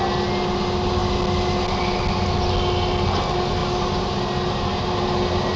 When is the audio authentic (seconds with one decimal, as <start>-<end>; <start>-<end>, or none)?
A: 0.0-5.6